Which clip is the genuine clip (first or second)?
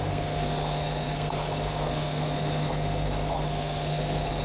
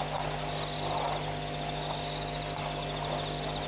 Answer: second